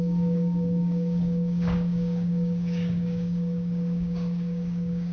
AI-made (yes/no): yes